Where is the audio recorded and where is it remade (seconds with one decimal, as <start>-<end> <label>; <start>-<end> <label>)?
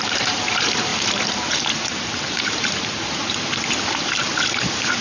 0.0-3.2 remade; 3.2-3.9 recorded; 3.9-4.3 remade; 4.3-5.0 recorded